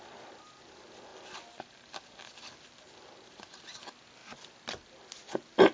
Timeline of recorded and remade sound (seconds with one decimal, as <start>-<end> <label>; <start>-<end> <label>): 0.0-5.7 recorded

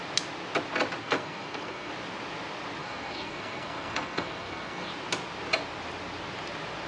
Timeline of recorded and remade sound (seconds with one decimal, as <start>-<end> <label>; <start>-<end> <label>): 0.0-1.0 recorded; 1.0-1.9 remade; 1.9-2.8 recorded; 2.8-4.9 remade; 4.9-6.9 recorded

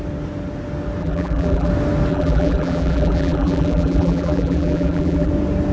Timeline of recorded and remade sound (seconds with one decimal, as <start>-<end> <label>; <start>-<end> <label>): 0.0-1.0 recorded; 1.0-1.7 remade; 1.7-2.1 recorded; 2.1-5.3 remade; 5.3-5.7 recorded

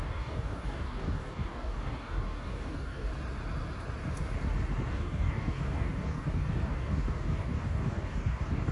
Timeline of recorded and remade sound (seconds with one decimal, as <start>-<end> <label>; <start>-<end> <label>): 0.0-3.1 remade; 3.1-4.9 recorded; 4.9-8.7 remade

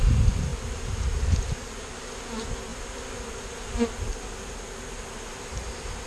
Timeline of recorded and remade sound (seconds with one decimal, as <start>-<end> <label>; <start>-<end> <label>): 0.0-0.5 recorded; 0.5-2.0 remade; 2.0-6.1 recorded